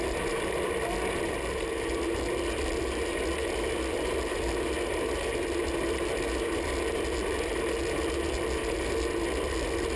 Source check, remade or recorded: recorded